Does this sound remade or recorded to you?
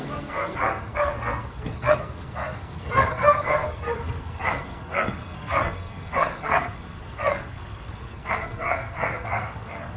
remade